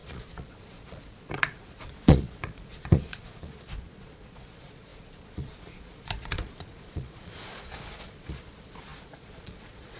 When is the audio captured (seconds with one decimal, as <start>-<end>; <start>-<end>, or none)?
none